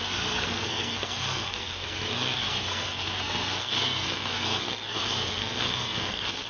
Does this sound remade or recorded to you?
remade